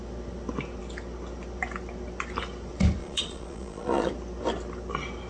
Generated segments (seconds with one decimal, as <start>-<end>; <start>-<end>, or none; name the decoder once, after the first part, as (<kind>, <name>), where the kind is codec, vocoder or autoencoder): 3.0-4.1 (vocoder, Vocos)